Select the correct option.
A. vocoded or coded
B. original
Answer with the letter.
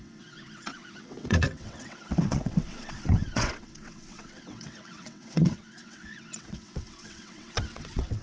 A